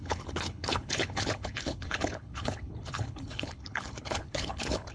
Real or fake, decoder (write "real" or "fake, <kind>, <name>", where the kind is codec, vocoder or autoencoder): fake, codec, HILCodec